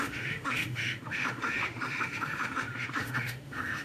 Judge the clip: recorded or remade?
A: remade